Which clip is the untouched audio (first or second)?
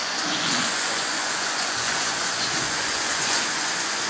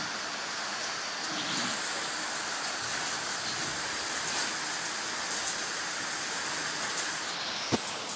second